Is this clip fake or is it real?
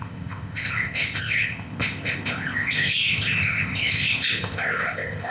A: fake